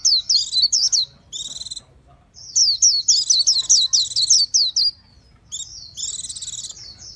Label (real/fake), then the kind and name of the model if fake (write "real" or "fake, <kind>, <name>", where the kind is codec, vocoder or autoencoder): real